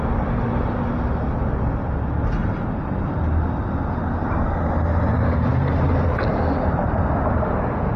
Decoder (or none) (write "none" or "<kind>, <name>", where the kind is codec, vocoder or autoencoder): none